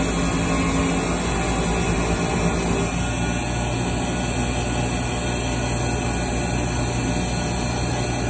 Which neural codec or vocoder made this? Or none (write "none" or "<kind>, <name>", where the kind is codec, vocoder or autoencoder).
none